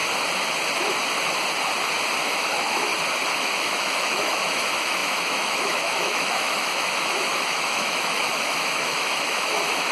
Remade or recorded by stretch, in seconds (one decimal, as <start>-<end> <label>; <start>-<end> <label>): 0.0-2.2 recorded; 2.2-2.9 remade; 2.9-3.4 recorded; 3.4-9.9 remade